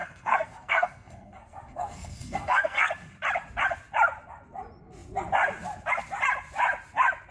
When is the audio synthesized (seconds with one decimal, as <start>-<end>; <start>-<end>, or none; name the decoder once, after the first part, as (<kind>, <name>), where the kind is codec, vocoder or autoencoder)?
0.0-2.9 (codec, SNAC)